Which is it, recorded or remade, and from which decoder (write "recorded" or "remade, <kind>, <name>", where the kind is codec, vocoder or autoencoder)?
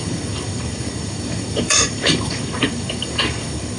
remade, codec, DAC